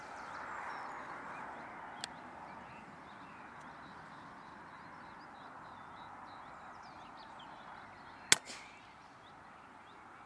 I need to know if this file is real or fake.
real